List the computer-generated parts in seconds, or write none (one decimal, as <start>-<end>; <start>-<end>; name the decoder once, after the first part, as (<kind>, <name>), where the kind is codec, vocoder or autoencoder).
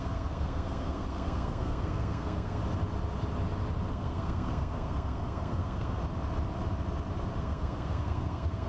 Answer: 0.0-2.6 (codec, SNAC); 3.9-6.0; 7.4-8.7